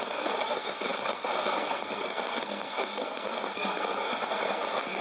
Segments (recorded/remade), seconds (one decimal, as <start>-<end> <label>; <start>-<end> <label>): 0.0-5.0 remade